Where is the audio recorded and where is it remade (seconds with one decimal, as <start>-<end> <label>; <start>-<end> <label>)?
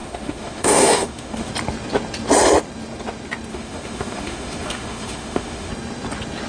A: 0.0-1.5 remade; 1.5-3.5 recorded; 3.5-5.7 remade; 5.7-6.5 recorded